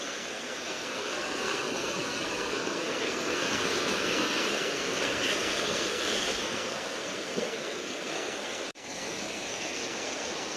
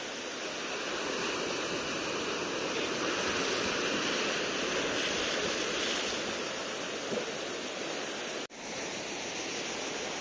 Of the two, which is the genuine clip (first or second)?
second